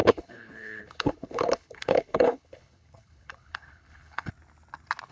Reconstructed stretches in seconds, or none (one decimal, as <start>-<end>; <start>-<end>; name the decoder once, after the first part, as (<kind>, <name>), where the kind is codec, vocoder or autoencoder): 0.0-4.3 (codec, HILCodec)

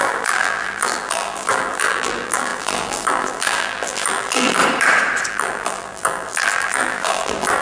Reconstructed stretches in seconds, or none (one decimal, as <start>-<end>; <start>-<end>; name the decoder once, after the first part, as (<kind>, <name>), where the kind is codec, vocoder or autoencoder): 0.0-4.6 (vocoder, BigVGAN v2); 5.3-7.6